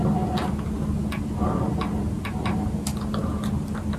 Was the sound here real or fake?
real